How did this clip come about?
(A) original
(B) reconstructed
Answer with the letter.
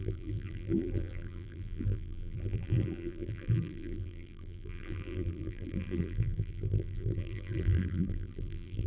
B